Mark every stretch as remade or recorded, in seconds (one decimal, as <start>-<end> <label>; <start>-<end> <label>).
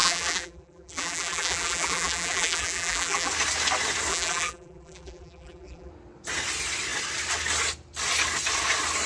0.0-3.3 remade; 3.3-4.1 recorded; 4.1-5.9 remade; 5.9-9.1 recorded